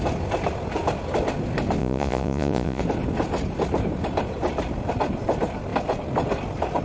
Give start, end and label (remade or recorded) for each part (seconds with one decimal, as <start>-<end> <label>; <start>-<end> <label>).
0.0-1.8 recorded; 1.8-2.8 remade; 2.8-6.8 recorded